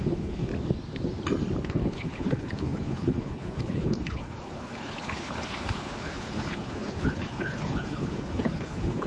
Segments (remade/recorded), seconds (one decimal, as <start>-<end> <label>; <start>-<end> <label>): 0.0-0.5 remade; 0.5-1.6 recorded; 1.6-9.1 remade